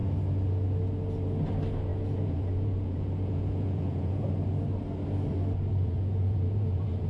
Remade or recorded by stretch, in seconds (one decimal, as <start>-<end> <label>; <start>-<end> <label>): 0.0-1.9 recorded; 1.9-4.3 remade; 4.3-5.7 recorded; 5.7-7.1 remade